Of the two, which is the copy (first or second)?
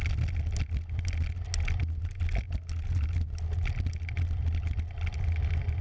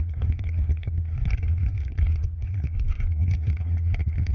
second